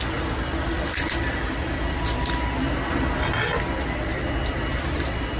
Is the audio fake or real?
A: real